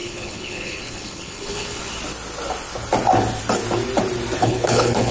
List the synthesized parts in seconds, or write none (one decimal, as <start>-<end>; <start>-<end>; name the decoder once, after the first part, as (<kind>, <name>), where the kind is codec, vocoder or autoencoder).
0.0-1.8 (codec, HILCodec); 4.4-5.1

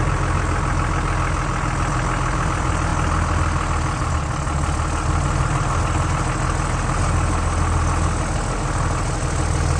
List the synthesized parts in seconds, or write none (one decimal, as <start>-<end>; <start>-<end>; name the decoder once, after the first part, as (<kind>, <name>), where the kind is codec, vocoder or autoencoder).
none

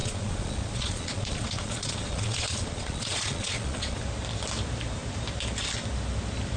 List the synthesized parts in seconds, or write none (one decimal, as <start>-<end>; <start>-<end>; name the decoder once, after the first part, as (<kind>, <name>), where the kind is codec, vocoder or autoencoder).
0.0-4.0 (vocoder, Vocos)

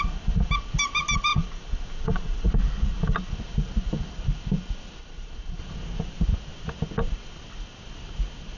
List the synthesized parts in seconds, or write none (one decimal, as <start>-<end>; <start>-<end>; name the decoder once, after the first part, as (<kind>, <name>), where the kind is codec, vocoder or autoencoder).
1.3-2.5 (vocoder, Vocos); 5.0-5.6

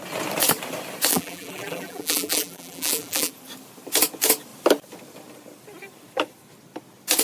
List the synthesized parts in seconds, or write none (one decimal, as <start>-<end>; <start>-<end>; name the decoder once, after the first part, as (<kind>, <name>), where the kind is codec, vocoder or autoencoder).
1.1-3.3 (vocoder, BigVGAN v2)

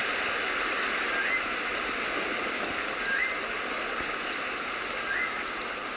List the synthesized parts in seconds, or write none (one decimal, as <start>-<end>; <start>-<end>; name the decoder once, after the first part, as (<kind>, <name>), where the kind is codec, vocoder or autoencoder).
none